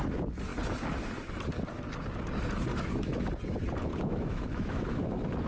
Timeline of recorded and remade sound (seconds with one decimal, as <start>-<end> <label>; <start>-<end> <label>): 0.0-2.7 recorded; 2.7-3.3 remade; 3.3-3.9 recorded; 3.9-5.0 remade; 5.0-5.5 recorded